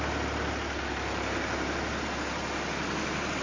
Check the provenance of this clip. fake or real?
real